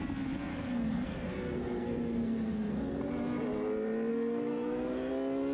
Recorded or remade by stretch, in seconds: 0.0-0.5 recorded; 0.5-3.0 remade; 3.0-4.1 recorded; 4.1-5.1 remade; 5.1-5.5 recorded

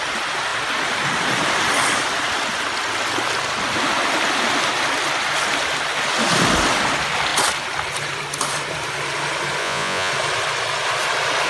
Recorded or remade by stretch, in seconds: 0.0-9.6 recorded; 9.6-10.1 remade; 10.1-11.5 recorded